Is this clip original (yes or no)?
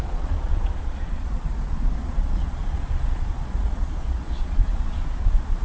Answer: no